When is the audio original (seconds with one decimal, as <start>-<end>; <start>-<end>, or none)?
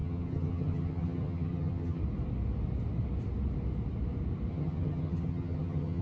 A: 2.0-4.5